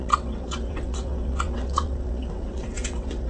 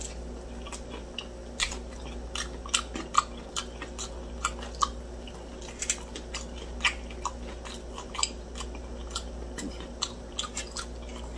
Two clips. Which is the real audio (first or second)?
second